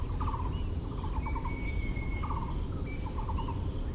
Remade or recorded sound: recorded